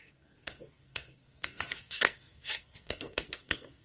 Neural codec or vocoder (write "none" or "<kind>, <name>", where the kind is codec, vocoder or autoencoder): codec, SNAC